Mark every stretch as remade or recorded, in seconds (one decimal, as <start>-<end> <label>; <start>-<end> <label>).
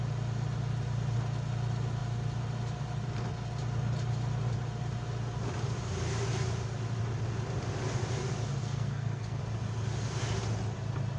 0.0-8.6 recorded; 8.6-9.4 remade; 9.4-11.2 recorded